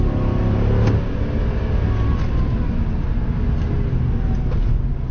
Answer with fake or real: real